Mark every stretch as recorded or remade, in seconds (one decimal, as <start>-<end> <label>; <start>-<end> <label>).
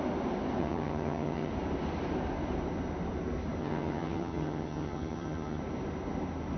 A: 0.0-0.6 recorded; 0.6-1.5 remade; 1.5-3.6 recorded; 3.6-5.6 remade; 5.6-6.6 recorded